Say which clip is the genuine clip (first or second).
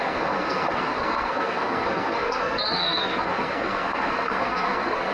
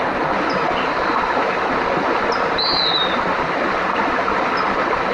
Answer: second